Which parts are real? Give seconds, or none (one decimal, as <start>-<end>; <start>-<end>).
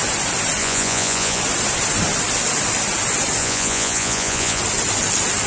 0.0-0.6; 1.4-3.4; 4.6-5.5